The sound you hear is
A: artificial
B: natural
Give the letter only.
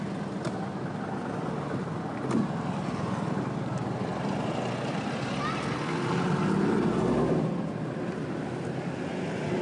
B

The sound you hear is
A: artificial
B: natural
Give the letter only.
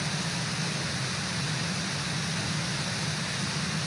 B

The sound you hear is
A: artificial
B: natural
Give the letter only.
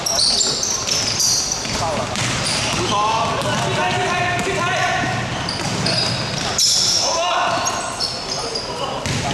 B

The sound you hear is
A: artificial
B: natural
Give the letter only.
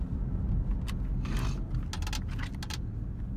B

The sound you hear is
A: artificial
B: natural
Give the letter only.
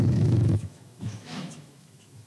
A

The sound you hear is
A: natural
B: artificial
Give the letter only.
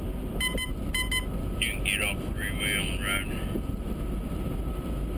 A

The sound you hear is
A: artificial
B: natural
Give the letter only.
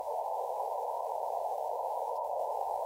A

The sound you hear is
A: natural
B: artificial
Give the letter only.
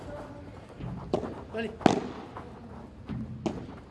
A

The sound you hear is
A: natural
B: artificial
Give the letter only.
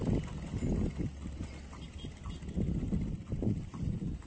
A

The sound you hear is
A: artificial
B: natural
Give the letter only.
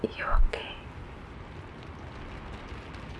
B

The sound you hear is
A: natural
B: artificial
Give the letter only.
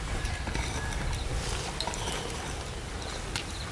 A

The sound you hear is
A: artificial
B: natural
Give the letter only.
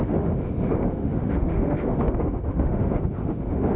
A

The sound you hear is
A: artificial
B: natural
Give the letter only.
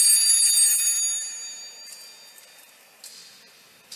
B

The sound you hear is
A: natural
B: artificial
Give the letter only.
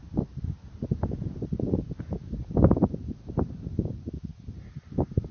A